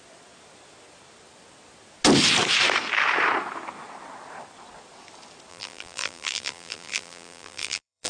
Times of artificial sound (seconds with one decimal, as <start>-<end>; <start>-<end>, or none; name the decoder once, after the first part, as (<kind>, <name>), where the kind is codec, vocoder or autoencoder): 5.5-8.1 (vocoder, BigVGAN v2)